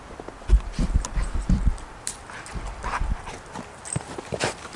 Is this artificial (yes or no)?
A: yes